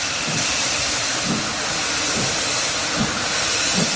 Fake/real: real